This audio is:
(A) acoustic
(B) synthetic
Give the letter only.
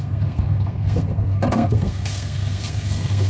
B